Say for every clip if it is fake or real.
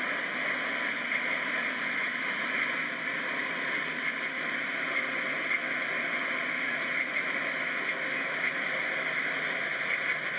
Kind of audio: real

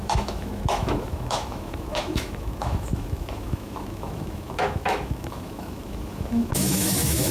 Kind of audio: fake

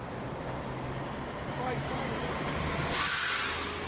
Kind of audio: real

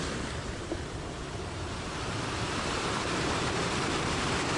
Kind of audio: fake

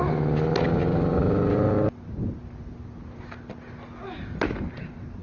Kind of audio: real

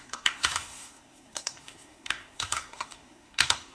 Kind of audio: fake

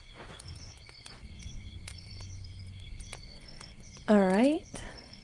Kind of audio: fake